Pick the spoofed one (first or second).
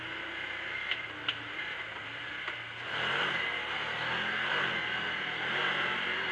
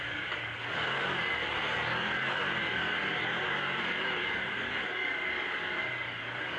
second